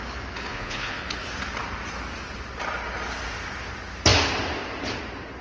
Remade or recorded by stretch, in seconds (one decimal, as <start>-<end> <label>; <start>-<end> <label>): 0.0-0.5 recorded; 0.5-1.0 remade; 1.0-5.4 recorded